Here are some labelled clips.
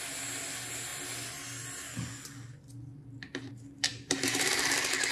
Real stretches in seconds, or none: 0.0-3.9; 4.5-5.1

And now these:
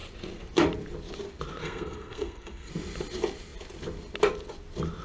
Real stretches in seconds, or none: 0.0-1.6; 2.7-5.0

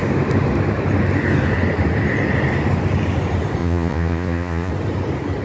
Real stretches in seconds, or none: 0.0-3.6; 4.7-5.4